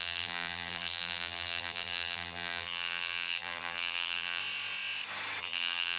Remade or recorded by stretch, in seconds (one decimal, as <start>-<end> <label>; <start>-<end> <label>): 0.0-4.4 remade; 4.4-5.4 recorded; 5.4-6.0 remade